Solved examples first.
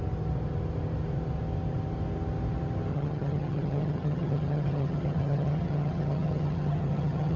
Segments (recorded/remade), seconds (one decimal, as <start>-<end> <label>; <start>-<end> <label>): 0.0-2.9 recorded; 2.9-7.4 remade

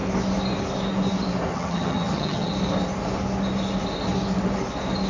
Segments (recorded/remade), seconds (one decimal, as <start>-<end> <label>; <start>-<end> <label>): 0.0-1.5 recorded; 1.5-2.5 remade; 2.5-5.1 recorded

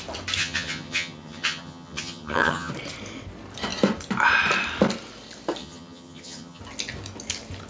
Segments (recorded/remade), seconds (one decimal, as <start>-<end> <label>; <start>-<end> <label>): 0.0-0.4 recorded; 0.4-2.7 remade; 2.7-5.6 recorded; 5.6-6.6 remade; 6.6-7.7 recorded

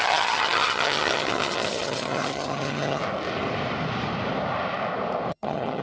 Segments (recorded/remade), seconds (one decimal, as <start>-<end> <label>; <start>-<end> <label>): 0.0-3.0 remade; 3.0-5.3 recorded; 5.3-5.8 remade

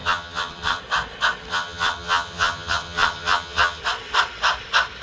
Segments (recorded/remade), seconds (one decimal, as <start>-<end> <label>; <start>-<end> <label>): 0.0-0.8 remade; 0.8-1.5 recorded; 1.5-3.8 remade; 3.8-5.0 recorded

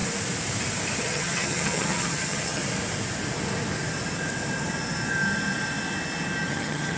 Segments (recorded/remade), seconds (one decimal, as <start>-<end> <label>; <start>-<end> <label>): 0.0-1.0 recorded; 1.0-2.6 remade; 2.6-6.5 recorded; 6.5-7.0 remade

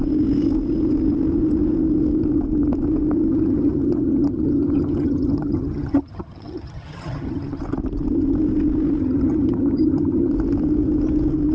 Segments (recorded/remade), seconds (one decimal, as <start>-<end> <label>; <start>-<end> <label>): 0.0-3.3 recorded; 3.3-7.6 remade; 7.6-9.0 recorded; 9.0-10.3 remade; 10.3-11.5 recorded

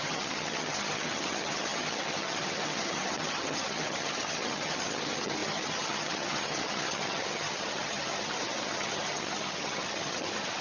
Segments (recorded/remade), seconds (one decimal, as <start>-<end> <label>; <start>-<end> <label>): 0.0-10.6 remade